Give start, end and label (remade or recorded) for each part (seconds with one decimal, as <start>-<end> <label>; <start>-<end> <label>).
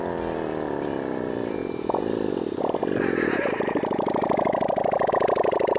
0.0-5.8 recorded